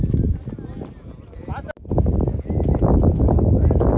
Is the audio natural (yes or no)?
yes